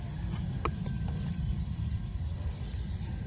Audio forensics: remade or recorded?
remade